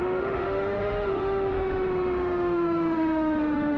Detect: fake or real fake